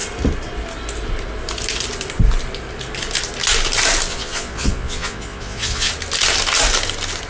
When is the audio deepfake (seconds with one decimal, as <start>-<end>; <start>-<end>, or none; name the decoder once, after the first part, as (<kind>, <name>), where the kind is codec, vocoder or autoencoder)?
4.1-5.9 (vocoder, Vocos)